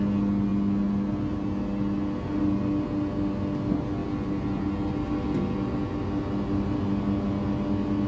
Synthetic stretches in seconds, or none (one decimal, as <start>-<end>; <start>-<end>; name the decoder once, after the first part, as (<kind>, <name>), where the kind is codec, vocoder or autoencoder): none